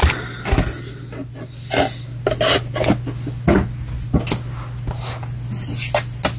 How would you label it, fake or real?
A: real